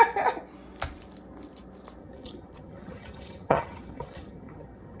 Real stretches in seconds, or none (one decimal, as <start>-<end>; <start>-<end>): 0.0-2.0